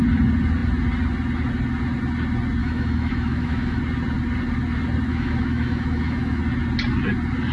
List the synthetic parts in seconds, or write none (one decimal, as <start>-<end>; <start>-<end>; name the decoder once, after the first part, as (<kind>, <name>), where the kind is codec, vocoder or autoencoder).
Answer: 2.6-3.8 (autoencoder, DAC-VAE); 5.1-6.4